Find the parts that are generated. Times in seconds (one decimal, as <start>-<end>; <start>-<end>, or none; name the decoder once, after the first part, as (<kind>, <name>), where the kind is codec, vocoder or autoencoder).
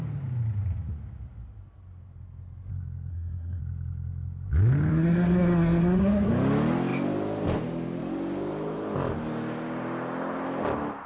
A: 3.1-3.6 (codec, SNAC); 4.9-6.3